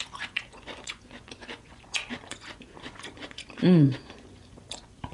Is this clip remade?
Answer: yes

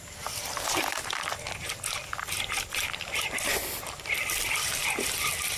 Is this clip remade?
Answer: no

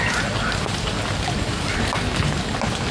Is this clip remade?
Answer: no